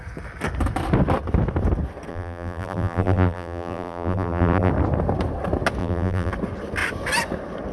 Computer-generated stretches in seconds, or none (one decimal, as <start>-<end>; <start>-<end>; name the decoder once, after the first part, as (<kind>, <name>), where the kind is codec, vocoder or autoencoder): 2.1-4.7 (vocoder, BigVGAN v2); 5.8-6.3